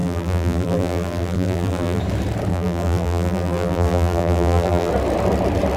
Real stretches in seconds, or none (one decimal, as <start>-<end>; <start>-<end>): 2.0-2.5; 4.9-5.8